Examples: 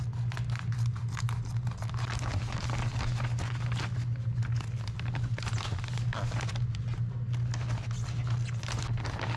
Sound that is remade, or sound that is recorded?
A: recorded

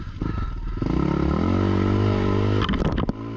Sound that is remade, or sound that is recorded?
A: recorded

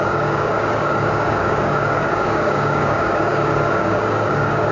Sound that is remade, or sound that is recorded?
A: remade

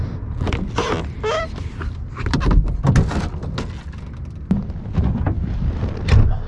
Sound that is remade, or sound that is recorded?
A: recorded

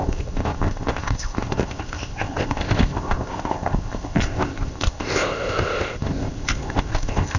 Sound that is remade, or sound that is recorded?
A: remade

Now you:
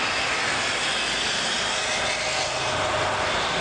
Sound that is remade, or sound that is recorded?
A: recorded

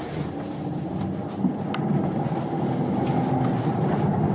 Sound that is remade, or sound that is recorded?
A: recorded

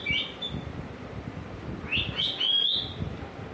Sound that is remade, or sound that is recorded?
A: recorded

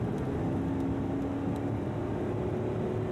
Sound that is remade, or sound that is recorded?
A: recorded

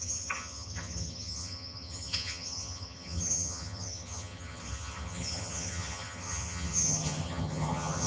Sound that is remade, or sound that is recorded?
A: remade